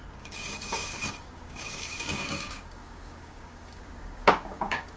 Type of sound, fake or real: fake